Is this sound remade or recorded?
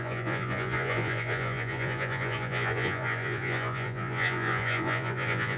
remade